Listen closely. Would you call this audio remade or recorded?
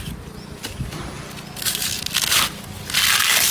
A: recorded